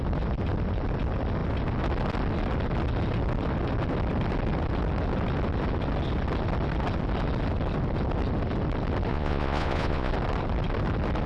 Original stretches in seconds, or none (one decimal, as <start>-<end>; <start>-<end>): 0.0-9.1; 10.1-11.3